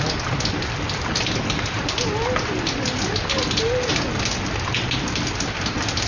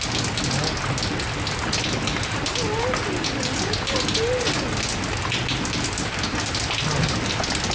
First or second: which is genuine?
second